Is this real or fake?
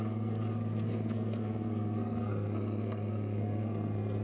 fake